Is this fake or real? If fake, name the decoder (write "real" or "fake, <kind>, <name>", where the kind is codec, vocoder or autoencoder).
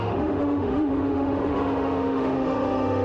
fake, autoencoder, DAC-VAE